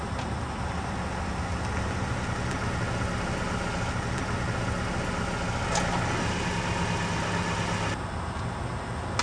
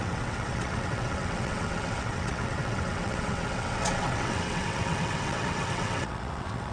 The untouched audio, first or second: first